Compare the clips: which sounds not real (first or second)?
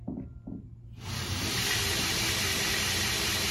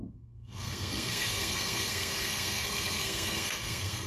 second